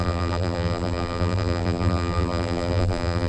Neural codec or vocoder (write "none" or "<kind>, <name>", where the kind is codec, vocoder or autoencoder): vocoder, BigVGAN v2